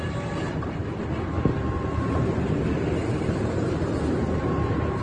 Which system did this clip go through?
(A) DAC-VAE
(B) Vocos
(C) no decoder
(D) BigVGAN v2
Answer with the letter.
D